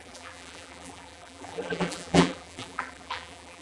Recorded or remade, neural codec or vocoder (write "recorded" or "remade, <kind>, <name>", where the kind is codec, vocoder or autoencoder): remade, vocoder, BigVGAN v2